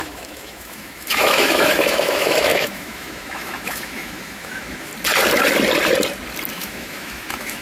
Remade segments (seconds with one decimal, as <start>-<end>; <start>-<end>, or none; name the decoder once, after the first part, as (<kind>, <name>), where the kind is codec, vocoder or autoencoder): 0.0-4.9 (autoencoder, DAC-VAE); 6.5-7.6